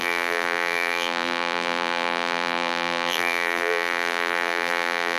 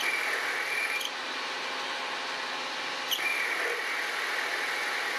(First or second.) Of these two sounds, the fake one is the first